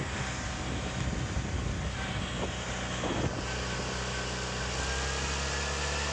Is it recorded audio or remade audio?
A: recorded